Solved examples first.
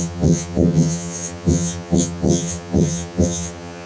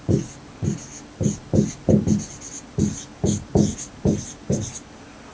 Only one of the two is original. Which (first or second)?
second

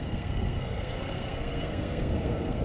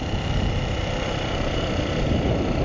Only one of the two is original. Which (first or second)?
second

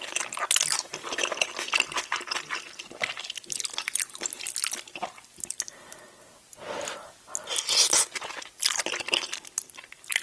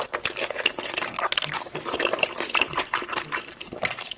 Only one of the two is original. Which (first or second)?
first